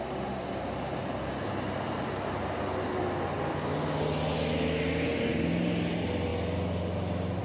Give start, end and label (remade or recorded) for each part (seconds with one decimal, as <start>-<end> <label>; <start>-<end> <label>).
0.0-7.4 recorded